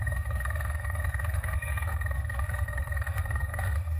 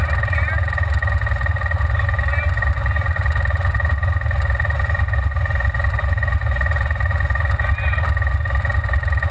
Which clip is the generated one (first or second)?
first